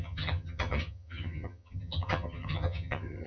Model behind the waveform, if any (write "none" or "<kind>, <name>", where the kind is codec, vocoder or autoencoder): vocoder, HiFi-GAN